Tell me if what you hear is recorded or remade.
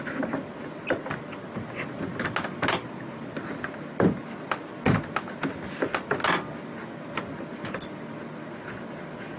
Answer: recorded